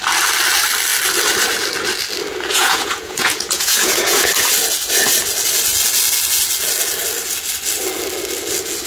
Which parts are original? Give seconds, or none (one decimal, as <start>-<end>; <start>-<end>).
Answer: 0.0-2.5; 4.3-8.9